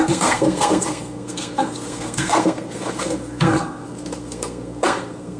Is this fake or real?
fake